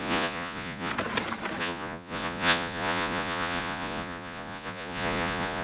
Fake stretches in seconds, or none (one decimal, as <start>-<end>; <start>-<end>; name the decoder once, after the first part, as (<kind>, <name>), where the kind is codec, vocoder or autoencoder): 0.0-0.9 (vocoder, Vocos); 1.6-5.6